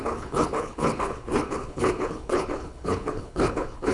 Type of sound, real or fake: fake